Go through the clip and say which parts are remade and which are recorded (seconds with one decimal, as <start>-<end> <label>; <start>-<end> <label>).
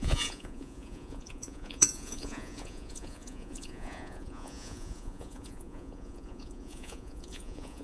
0.0-7.8 remade